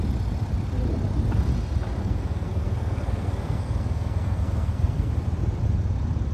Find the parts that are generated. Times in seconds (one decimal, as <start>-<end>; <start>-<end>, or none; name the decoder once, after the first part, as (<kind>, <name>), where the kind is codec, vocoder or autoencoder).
2.0-5.1 (codec, SNAC)